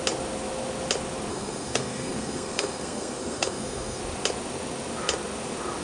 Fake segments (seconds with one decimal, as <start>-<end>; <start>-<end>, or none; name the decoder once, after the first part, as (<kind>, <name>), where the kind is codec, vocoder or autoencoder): 1.3-4.0 (codec, SNAC)